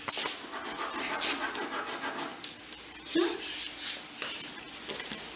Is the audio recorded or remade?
recorded